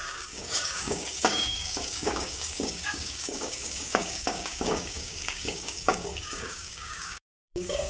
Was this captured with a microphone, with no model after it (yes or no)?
no